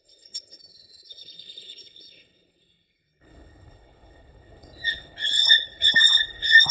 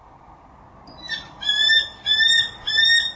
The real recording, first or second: second